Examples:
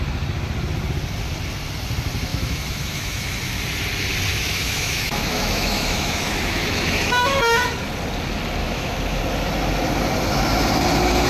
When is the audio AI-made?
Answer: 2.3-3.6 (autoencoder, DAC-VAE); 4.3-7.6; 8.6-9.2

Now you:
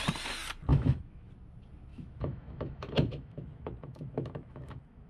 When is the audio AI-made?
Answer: 0.7-1.3 (autoencoder, DAC-VAE); 1.9-5.1

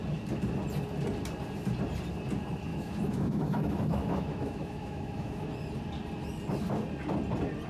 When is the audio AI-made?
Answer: 2.7-5.5 (autoencoder, DAC-VAE)